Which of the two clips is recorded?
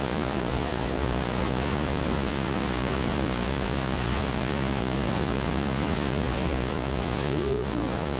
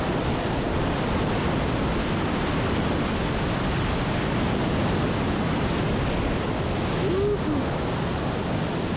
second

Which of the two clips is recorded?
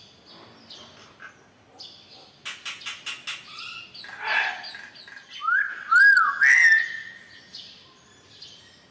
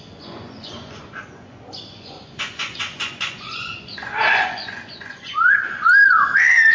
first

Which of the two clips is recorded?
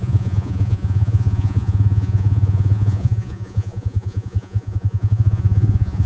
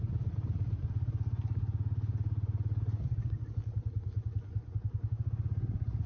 second